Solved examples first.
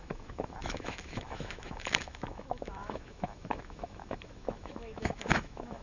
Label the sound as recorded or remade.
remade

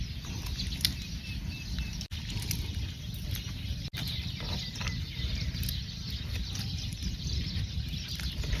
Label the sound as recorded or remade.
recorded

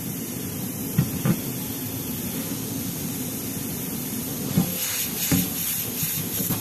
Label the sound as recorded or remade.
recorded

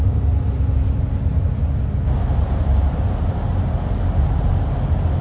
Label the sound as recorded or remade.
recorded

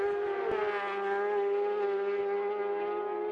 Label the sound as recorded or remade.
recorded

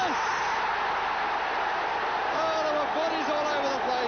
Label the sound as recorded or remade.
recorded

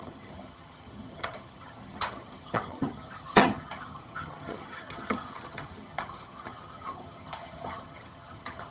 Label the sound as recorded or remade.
remade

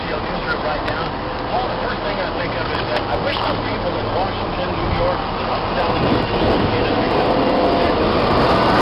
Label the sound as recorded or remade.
recorded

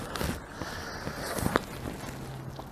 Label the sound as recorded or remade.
recorded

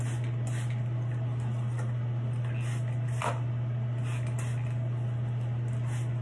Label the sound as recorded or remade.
recorded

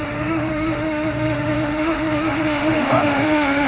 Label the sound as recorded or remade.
remade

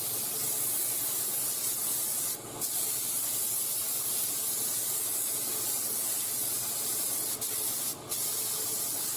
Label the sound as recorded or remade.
recorded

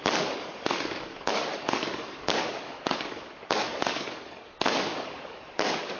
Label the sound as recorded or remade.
remade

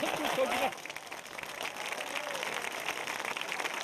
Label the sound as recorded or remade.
recorded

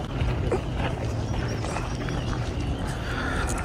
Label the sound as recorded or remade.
recorded